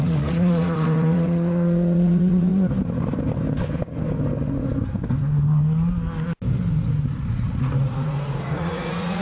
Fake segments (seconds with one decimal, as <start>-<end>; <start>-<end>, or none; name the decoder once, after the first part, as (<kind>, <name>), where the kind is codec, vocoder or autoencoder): 0.0-2.5 (vocoder, Vocos); 7.3-9.2